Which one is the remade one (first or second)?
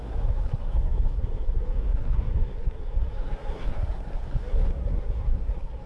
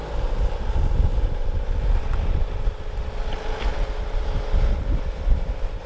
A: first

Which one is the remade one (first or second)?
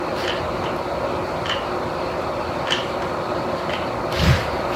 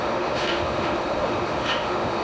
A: second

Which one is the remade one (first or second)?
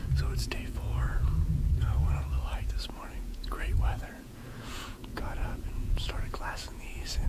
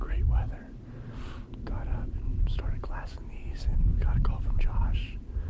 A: first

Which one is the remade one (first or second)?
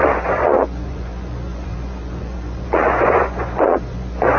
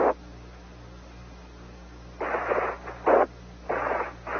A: first